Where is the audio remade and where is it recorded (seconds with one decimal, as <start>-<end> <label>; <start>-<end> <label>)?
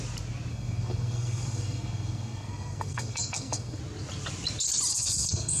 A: 0.0-0.5 recorded; 0.5-3.8 remade; 3.8-4.9 recorded; 4.9-5.6 remade